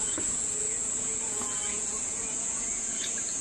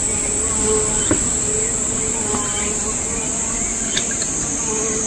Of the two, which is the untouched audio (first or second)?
second